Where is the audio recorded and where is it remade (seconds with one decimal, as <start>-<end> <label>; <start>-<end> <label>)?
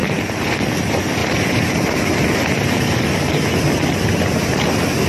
0.0-5.1 recorded